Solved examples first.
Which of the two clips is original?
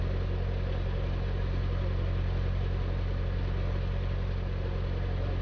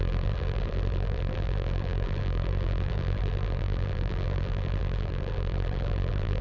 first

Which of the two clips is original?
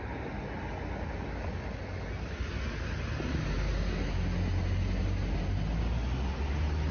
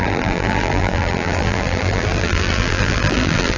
first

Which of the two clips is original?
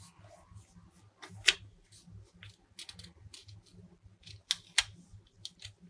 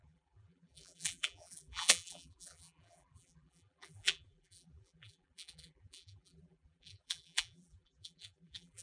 first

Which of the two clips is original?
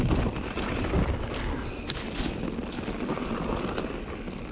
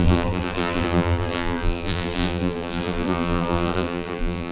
first